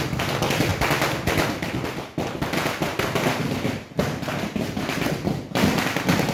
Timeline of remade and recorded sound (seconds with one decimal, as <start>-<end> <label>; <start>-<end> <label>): 0.0-6.3 recorded